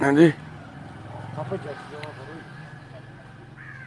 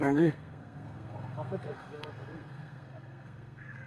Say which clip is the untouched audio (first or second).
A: first